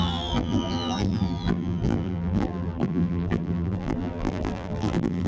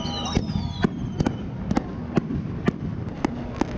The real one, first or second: second